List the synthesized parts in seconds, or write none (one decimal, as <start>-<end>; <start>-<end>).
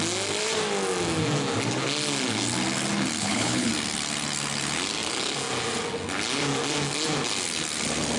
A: 3.2-3.7